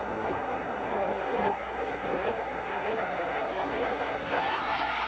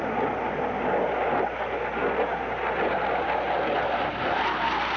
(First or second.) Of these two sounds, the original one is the second